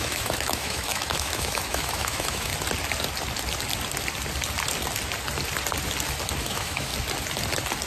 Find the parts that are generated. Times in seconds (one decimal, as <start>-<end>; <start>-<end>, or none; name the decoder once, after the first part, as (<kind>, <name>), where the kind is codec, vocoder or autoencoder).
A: 0.0-2.5 (autoencoder, DAC-VAE); 6.4-6.9

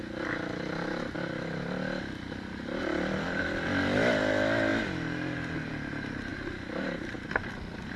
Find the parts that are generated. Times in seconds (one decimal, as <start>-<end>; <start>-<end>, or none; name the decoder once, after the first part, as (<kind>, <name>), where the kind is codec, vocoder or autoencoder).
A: none

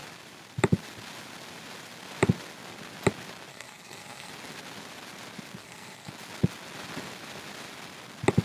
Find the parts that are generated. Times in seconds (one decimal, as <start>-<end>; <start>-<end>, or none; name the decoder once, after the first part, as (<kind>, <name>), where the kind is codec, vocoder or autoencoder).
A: 3.5-4.3 (codec, SNAC); 5.6-6.1